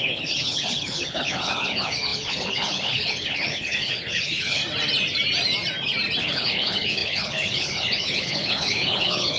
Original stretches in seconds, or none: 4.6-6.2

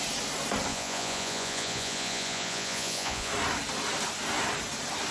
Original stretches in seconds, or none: 0.0-0.7; 3.3-5.1

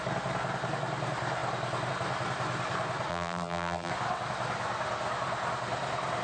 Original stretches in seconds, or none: 0.0-3.1; 3.9-6.2